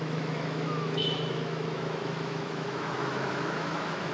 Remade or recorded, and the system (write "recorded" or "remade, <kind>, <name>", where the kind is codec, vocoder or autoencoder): remade, autoencoder, DAC-VAE